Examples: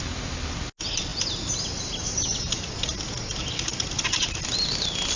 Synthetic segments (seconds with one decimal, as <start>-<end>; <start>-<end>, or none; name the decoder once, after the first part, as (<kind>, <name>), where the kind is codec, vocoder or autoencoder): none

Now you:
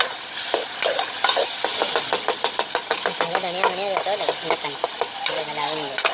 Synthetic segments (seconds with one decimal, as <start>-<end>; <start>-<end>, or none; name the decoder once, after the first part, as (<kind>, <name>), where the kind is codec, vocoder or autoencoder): none

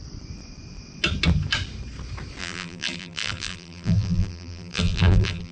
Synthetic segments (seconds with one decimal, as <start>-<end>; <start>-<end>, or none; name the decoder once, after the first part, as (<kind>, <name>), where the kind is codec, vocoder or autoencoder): 2.4-5.5 (vocoder, BigVGAN v2)

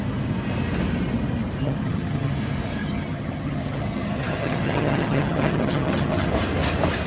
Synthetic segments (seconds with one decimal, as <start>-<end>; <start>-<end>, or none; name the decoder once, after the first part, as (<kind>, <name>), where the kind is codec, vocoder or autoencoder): 1.6-2.3 (vocoder, HiFi-GAN); 2.8-6.3

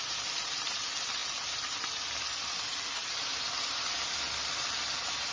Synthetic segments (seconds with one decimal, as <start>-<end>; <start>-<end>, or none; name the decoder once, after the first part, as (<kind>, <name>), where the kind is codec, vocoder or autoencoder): none